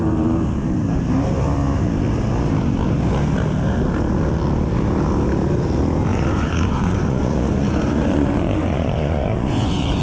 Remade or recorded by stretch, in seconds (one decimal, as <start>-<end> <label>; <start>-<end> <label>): 0.0-6.1 recorded; 6.1-10.0 remade